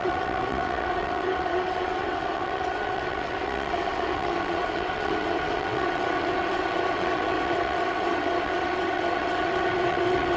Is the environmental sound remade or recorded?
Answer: remade